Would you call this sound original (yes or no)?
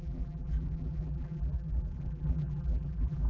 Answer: no